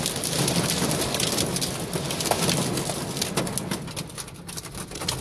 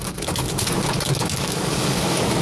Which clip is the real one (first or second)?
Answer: first